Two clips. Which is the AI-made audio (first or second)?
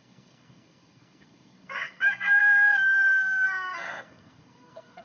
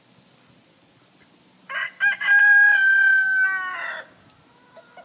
first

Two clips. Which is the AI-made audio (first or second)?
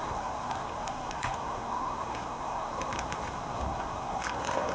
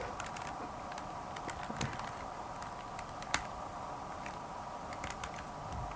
first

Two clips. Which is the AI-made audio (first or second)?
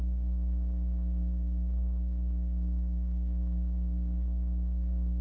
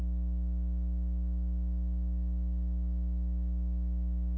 first